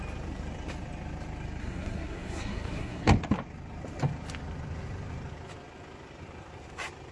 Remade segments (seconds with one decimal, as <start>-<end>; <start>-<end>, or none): 1.6-3.1